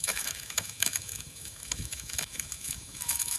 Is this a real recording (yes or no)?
no